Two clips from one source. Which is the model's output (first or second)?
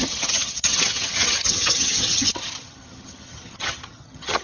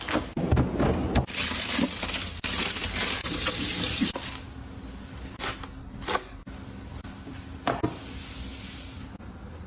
first